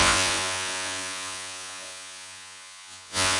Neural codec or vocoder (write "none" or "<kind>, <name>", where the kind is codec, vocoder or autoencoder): vocoder, Vocos